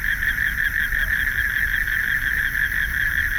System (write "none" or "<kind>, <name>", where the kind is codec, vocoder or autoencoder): none